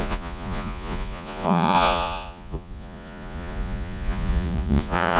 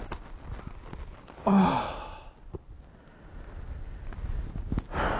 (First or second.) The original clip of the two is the second